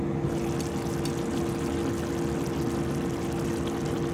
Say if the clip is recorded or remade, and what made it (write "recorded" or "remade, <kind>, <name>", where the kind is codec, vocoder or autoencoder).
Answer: recorded